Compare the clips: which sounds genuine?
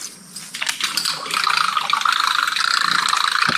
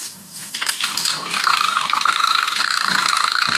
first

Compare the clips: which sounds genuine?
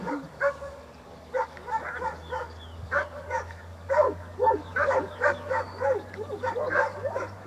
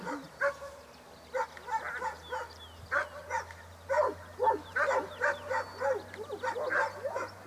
second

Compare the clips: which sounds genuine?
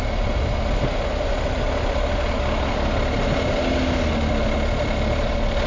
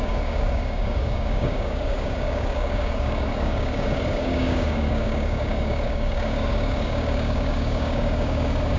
first